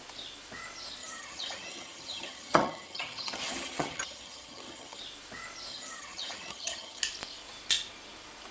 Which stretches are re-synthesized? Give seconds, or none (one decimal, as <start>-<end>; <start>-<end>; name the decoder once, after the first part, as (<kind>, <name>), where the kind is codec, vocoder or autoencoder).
1.0-5.0 (vocoder, HiFi-GAN); 5.7-7.0